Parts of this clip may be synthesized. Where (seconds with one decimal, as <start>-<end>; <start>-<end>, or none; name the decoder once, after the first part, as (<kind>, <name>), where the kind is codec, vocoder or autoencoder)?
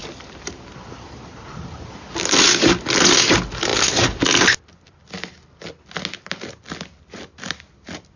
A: none